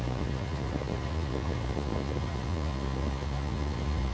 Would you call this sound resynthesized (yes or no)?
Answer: yes